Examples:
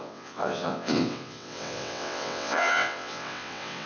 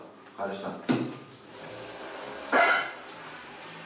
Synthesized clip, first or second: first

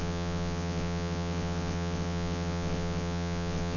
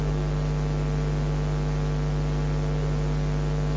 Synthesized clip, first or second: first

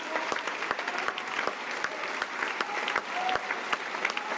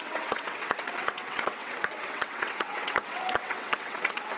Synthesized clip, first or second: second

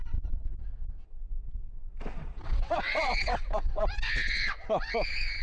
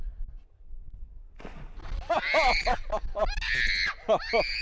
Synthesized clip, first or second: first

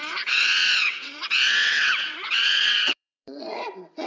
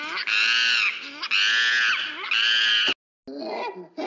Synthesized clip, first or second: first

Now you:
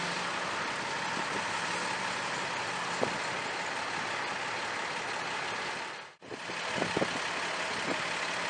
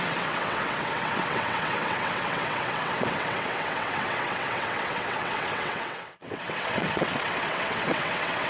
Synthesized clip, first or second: second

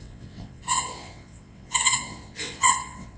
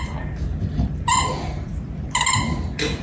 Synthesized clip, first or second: first